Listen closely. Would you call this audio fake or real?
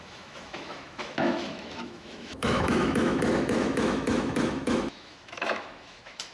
fake